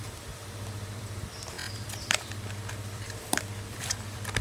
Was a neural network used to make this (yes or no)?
yes